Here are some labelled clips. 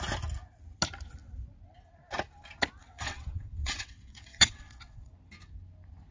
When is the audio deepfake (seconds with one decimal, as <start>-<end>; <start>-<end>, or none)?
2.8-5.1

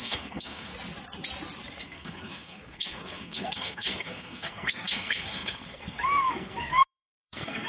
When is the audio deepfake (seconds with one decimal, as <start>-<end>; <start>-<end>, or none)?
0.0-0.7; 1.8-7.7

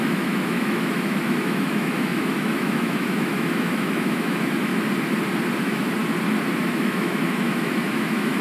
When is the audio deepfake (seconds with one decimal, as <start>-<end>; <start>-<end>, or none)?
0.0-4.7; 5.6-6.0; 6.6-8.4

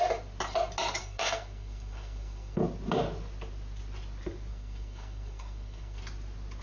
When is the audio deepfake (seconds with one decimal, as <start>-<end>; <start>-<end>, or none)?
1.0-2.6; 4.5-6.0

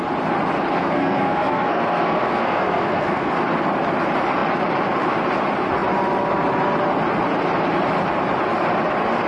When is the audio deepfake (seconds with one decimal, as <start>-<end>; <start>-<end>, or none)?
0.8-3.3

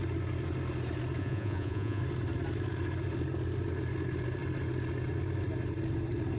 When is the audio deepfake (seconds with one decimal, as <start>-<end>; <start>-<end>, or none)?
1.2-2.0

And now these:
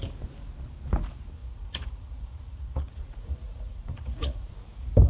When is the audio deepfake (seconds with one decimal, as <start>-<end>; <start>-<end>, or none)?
1.4-4.5